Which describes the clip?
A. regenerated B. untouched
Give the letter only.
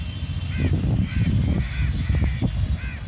B